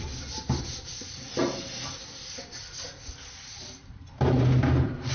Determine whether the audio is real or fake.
fake